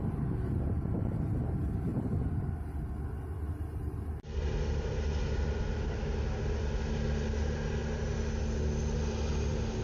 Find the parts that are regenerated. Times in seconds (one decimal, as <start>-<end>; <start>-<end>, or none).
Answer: none

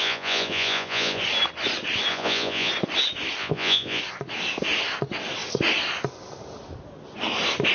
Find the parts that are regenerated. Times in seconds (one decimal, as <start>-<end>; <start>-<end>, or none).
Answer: 0.0-1.2; 2.1-2.7; 3.4-4.0